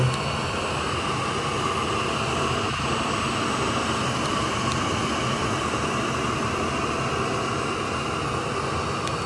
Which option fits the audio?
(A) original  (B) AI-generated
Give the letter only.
A